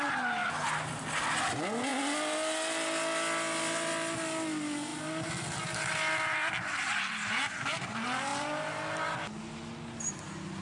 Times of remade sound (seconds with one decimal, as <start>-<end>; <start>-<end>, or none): none